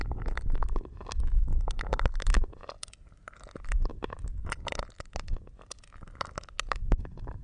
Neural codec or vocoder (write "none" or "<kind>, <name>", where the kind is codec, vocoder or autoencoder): none